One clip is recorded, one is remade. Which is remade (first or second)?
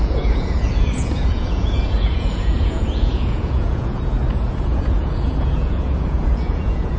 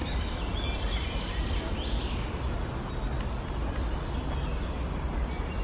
first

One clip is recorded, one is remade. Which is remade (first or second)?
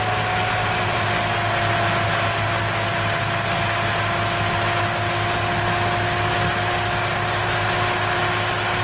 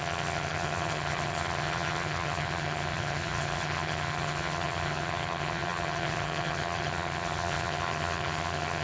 second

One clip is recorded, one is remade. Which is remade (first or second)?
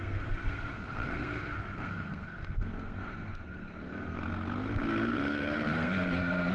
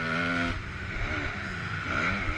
first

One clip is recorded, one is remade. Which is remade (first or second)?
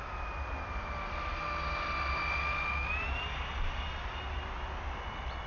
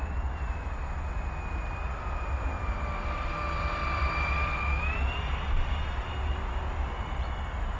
second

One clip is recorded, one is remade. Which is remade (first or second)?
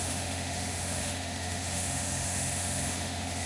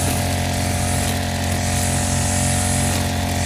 first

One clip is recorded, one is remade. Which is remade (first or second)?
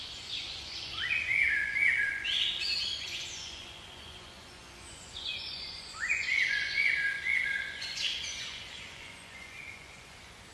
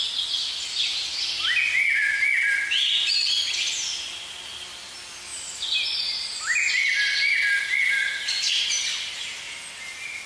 first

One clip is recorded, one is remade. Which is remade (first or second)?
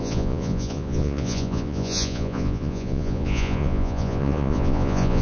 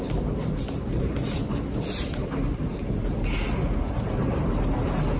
first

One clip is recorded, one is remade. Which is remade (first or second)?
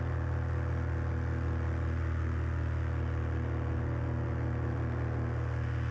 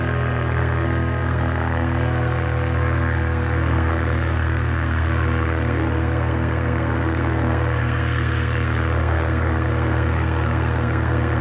second